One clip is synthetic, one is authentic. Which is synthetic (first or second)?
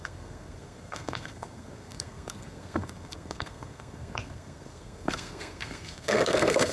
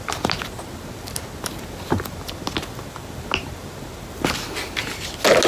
first